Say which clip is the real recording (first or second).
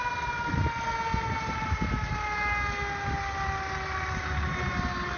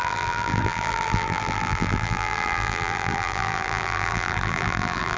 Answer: first